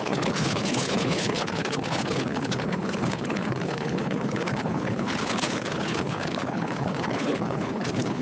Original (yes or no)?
no